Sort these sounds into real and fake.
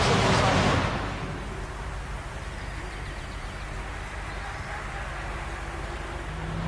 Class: real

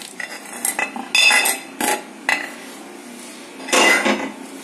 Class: real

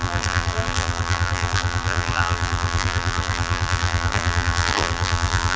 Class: fake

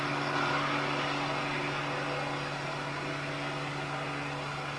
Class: real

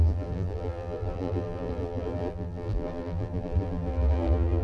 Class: fake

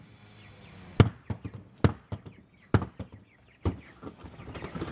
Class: real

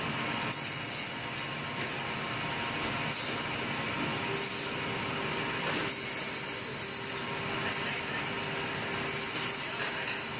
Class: real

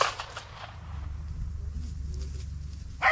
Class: real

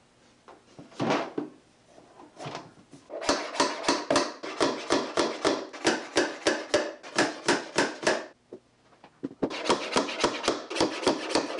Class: real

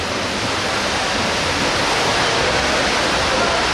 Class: real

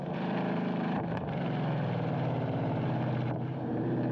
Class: fake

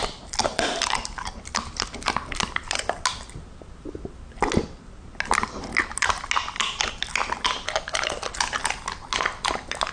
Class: real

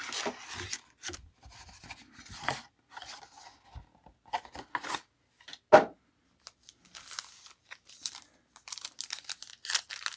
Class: real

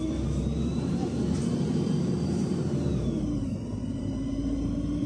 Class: fake